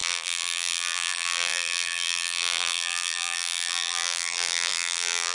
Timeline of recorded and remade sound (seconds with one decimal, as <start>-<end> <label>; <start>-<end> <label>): 0.0-5.3 remade